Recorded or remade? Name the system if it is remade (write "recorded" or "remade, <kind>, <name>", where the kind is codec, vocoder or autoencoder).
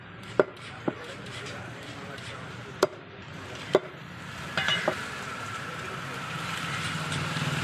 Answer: remade, vocoder, BigVGAN v2